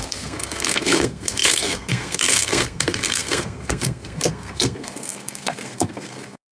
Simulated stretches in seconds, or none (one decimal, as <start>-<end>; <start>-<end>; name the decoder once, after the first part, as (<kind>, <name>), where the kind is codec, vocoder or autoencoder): 0.0-6.5 (codec, SNAC)